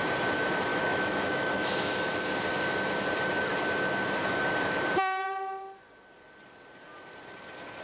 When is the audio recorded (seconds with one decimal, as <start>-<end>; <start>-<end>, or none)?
0.0-0.7; 2.0-7.8